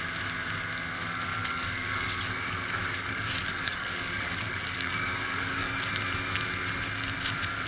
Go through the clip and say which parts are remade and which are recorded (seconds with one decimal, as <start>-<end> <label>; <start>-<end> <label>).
0.0-1.3 recorded; 1.3-5.9 remade; 5.9-7.7 recorded